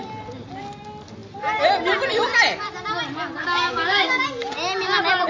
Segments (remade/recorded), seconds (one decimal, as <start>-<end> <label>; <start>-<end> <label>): 0.0-3.4 recorded; 3.4-4.2 remade; 4.2-5.3 recorded